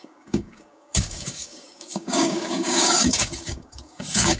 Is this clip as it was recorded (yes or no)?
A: no